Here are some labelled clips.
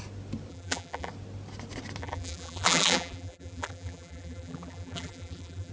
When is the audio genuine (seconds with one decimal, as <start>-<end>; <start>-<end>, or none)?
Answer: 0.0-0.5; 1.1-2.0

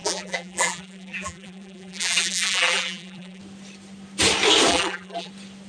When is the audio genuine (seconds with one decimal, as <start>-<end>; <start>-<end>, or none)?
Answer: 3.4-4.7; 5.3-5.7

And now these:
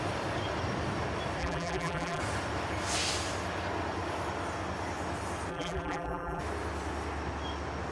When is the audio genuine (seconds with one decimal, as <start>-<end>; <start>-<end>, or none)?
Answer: 0.0-1.4; 2.2-5.5; 6.4-7.9

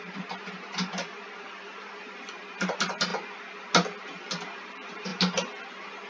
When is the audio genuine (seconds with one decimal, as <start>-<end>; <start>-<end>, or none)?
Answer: 3.1-4.3; 5.1-6.1